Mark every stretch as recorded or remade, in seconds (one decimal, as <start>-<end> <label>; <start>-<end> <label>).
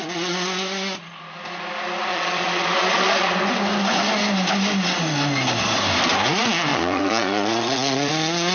0.0-2.1 recorded; 2.1-3.4 remade; 3.4-6.7 recorded; 6.7-8.1 remade; 8.1-8.5 recorded